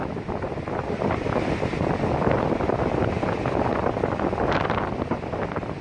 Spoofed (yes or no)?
no